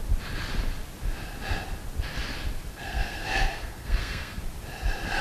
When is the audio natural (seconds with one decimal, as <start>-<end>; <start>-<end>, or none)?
0.0-2.7; 4.4-5.2